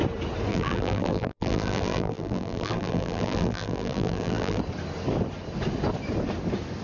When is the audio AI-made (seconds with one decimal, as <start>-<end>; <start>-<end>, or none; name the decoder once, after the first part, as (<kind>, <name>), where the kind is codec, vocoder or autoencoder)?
0.5-4.6 (vocoder, BigVGAN v2)